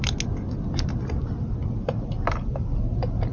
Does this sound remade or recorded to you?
recorded